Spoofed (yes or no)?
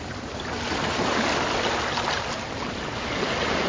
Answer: no